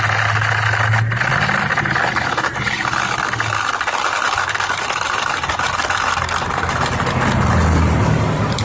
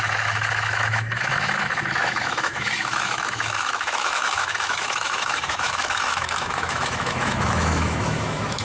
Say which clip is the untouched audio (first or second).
first